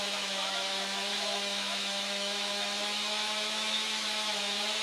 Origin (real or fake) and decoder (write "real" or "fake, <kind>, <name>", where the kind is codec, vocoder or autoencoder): fake, autoencoder, DAC-VAE